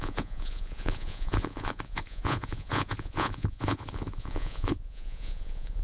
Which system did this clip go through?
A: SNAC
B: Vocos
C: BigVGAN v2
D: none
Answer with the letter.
B